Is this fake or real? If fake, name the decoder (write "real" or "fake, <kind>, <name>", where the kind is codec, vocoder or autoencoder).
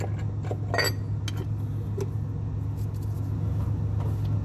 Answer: real